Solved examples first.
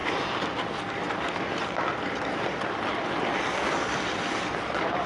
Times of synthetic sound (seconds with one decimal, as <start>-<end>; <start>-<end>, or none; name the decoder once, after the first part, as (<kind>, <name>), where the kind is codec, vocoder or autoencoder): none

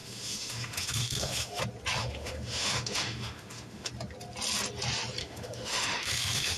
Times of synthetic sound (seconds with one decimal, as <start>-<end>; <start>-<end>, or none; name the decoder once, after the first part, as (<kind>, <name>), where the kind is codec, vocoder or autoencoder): 0.0-1.6 (autoencoder, DAC-VAE); 2.0-3.9; 5.2-6.6

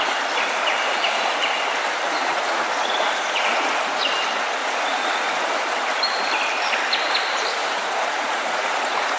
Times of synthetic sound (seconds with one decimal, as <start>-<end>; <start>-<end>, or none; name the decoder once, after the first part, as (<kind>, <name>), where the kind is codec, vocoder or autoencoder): 2.2-4.0 (vocoder, Vocos); 4.6-5.4; 7.6-9.2

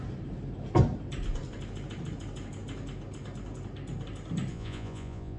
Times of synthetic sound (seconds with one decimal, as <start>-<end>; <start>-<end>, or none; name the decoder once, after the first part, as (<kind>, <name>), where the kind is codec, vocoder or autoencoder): 4.5-5.4 (vocoder, Vocos)

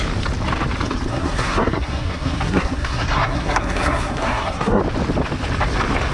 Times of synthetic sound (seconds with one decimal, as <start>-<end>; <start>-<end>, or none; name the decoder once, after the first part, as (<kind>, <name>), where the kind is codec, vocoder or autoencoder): 1.1-4.8 (codec, SNAC)

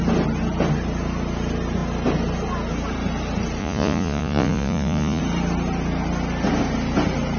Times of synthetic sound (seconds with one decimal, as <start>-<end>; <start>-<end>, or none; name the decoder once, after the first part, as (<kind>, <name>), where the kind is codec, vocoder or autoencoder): 3.6-5.2 (vocoder, Vocos)

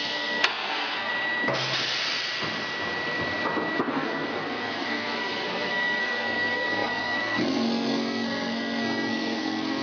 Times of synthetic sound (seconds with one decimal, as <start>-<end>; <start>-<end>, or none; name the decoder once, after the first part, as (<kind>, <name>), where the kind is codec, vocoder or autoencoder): 0.0-1.1 (codec, SNAC); 3.9-9.8